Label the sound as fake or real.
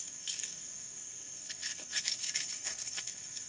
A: fake